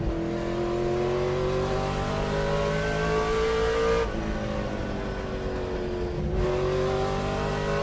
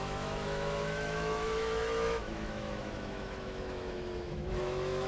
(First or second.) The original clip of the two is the first